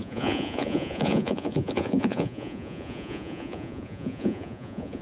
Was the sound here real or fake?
fake